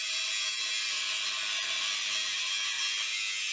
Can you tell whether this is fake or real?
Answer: real